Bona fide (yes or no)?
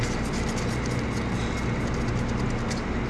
yes